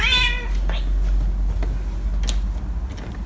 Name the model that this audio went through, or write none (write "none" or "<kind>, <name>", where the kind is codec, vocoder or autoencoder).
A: none